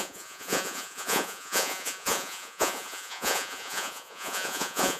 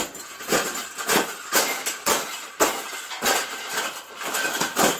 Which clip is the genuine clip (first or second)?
second